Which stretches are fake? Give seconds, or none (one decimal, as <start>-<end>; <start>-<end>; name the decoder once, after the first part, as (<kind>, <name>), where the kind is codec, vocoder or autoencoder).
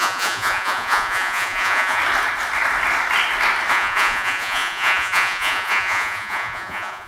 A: 0.0-2.0 (vocoder, Vocos); 3.7-7.1